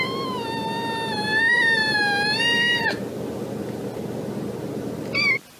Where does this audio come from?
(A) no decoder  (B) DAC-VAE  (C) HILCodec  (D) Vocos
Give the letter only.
A